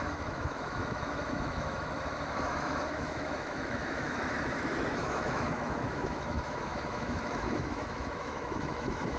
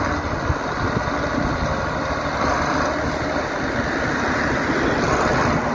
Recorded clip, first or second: second